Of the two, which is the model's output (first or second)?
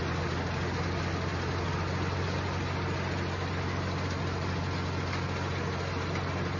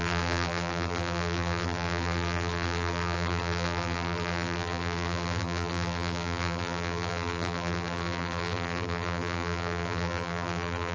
second